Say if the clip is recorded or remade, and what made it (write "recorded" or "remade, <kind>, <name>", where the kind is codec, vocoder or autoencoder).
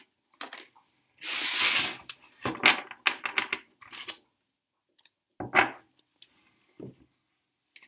recorded